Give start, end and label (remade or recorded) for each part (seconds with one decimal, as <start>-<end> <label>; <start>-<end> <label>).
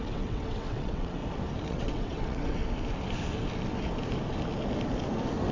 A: 0.0-1.2 remade; 1.2-1.7 recorded; 1.7-2.6 remade; 2.6-5.5 recorded